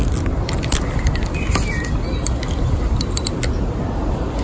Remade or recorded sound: recorded